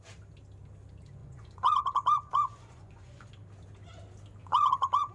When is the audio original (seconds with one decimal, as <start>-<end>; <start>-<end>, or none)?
0.0-1.2; 3.3-4.4